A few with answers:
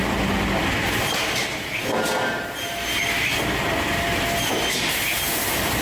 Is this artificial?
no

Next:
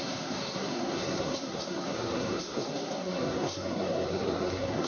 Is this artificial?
yes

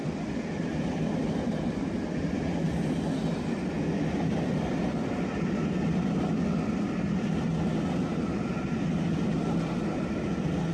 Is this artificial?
no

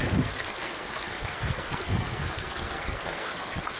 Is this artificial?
yes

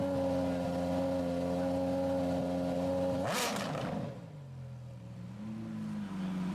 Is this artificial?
no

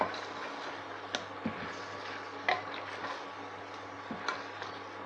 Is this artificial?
no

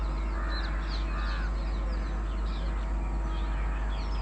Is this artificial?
no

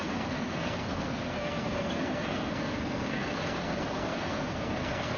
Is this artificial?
yes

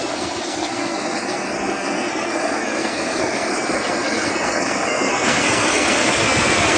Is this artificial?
yes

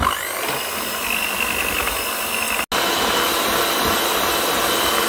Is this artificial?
no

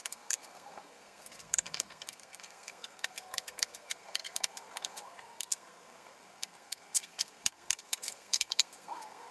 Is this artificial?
yes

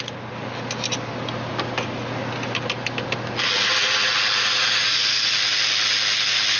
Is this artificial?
no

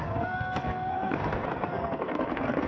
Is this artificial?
yes